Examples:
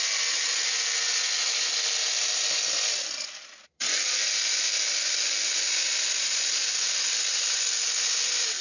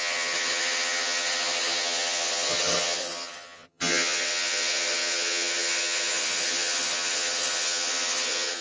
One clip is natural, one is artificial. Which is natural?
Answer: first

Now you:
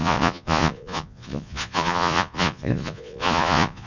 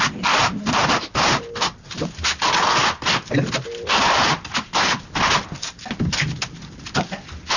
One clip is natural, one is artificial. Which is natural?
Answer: second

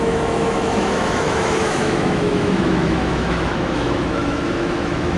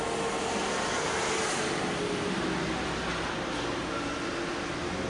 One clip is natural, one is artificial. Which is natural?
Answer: second